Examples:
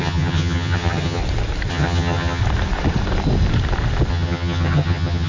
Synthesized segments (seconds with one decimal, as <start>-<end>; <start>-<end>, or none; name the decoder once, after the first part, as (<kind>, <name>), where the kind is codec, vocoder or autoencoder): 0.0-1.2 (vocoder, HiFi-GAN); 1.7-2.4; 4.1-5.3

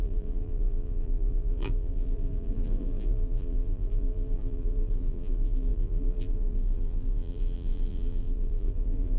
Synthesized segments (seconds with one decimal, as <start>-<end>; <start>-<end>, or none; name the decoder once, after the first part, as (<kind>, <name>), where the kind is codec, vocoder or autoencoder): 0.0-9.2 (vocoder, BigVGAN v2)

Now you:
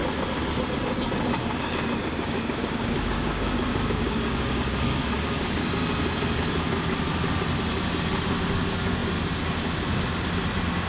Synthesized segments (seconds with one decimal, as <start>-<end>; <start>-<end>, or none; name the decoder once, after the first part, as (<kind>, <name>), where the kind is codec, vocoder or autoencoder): 1.4-5.7 (codec, DAC)

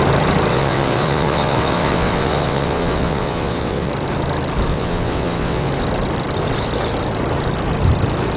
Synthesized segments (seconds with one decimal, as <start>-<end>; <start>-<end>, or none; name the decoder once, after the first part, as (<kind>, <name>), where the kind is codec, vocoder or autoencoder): 0.5-3.9 (vocoder, WaveNeXt); 4.7-5.7

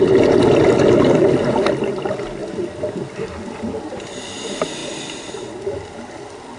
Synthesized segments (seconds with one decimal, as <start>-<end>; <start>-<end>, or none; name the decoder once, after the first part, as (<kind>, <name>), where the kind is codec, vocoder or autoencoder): none

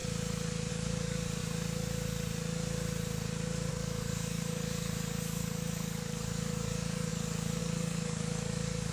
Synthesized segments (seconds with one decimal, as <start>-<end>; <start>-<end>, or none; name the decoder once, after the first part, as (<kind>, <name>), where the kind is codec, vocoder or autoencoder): 0.7-1.4 (codec, DAC); 3.7-8.9